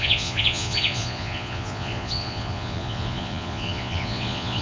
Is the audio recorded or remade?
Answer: remade